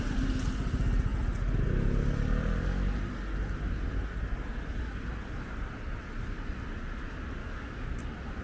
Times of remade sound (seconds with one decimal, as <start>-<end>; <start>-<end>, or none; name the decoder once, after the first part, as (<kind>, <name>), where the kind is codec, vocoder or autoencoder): 7.4-7.9 (codec, DAC)